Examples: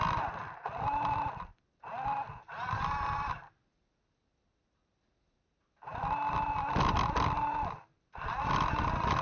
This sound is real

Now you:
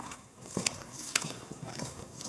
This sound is fake